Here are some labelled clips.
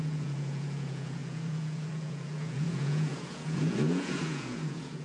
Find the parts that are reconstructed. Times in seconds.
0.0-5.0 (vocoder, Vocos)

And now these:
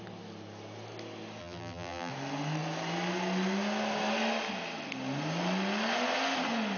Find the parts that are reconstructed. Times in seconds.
1.4-2.1 (vocoder, BigVGAN v2)